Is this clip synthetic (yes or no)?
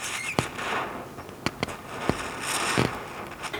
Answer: no